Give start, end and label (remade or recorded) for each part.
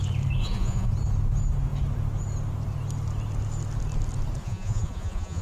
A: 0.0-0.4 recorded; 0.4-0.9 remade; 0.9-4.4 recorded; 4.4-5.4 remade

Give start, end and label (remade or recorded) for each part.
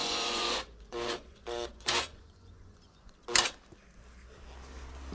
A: 0.0-3.1 remade; 3.1-5.1 recorded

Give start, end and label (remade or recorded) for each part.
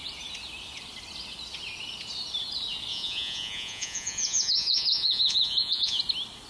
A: 0.0-2.9 recorded; 2.9-6.0 remade; 6.0-6.5 recorded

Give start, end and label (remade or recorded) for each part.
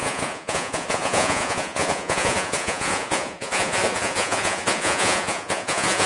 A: 0.0-6.1 remade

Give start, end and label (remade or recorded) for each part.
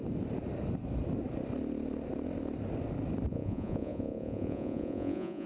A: 0.0-3.3 recorded; 3.3-5.5 remade